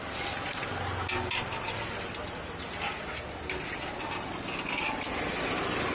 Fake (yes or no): no